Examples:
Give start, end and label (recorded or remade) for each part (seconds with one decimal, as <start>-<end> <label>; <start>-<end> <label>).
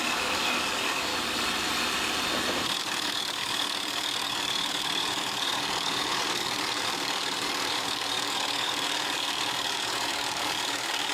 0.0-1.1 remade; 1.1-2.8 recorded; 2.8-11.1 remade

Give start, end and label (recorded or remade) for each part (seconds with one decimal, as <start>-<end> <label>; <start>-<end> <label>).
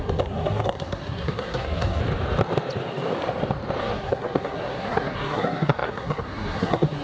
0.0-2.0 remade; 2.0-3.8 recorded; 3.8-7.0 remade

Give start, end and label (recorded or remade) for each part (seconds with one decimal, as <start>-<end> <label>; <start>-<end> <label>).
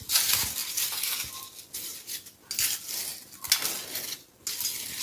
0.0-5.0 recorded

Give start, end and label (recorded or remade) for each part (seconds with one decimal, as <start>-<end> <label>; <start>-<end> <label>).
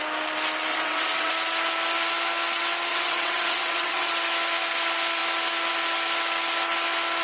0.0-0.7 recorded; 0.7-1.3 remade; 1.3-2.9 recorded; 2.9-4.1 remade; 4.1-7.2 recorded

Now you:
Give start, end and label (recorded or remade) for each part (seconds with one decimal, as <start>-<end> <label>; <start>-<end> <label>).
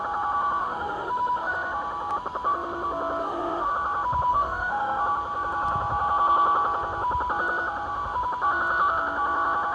0.0-0.6 recorded; 0.6-1.5 remade; 1.5-3.2 recorded; 3.2-3.7 remade; 3.7-4.3 recorded; 4.3-5.0 remade; 5.0-9.7 recorded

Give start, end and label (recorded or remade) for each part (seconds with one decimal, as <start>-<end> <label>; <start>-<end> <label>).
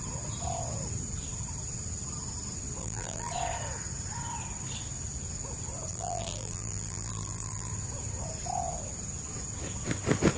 0.0-2.8 recorded; 2.8-3.3 remade; 3.3-5.9 recorded; 5.9-7.7 remade; 7.7-10.4 recorded